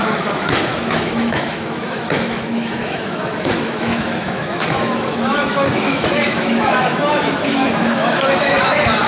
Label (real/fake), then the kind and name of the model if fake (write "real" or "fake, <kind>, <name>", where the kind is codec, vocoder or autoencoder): fake, autoencoder, DAC-VAE